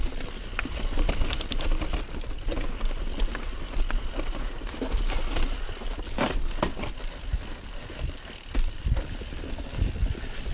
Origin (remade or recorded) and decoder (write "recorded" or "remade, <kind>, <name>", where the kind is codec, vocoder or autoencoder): recorded